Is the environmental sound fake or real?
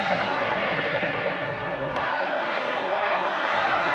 fake